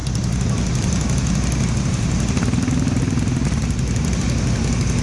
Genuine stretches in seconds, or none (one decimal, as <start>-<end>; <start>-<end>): 0.0-5.0